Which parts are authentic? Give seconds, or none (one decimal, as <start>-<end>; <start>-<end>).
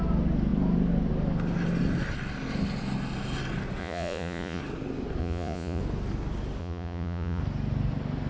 0.0-3.8; 4.6-5.2; 5.8-6.6; 7.4-8.3